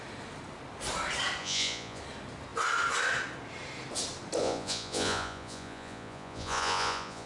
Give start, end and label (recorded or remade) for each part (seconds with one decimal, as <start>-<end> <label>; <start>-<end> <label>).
0.0-1.4 recorded; 1.4-2.0 remade; 2.0-4.4 recorded; 4.4-7.3 remade